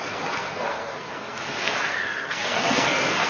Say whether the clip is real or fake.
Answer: fake